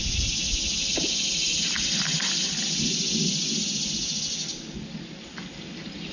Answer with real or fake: real